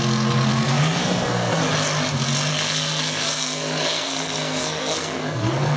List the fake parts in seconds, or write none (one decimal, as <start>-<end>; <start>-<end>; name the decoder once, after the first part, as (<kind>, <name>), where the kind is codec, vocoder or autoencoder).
0.5-1.6 (codec, SNAC); 2.5-5.8